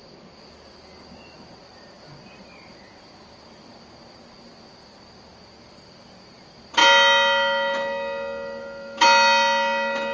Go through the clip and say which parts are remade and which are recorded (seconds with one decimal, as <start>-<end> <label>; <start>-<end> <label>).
0.0-10.1 recorded

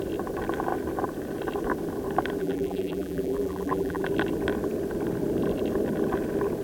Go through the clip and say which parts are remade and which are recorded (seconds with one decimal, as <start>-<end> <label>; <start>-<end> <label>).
0.0-2.4 recorded; 2.4-4.0 remade; 4.0-6.6 recorded

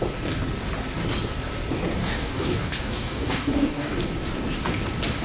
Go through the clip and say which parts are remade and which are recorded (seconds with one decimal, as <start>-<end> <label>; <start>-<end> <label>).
0.0-2.0 recorded; 2.0-4.0 remade; 4.0-5.2 recorded